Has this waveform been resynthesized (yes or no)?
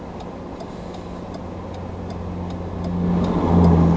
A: no